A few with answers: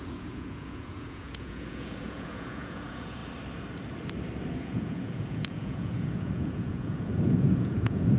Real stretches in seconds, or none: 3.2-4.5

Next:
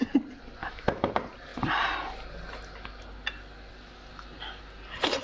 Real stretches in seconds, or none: 0.0-0.6; 1.1-5.2

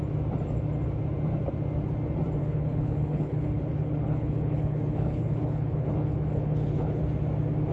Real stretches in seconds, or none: 0.0-2.4; 7.0-7.7

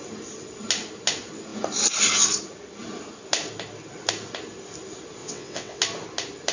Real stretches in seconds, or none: 0.0-5.2; 5.8-6.5

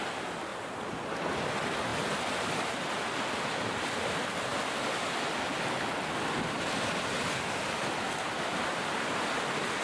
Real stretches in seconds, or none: 0.0-0.5; 1.0-9.8

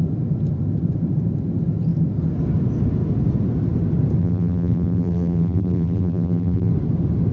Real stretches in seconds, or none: 0.0-4.2; 6.7-7.3

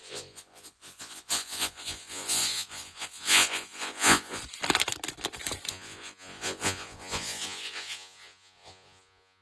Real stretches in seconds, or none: 4.4-5.7

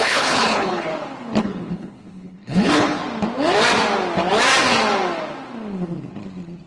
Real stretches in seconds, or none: 0.9-1.4; 3.0-6.7